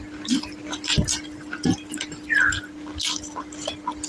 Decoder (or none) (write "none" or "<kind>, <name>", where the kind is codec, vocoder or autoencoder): none